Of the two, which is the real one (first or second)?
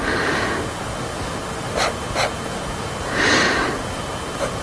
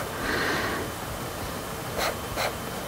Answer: first